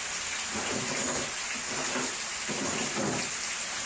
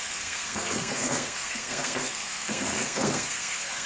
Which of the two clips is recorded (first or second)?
first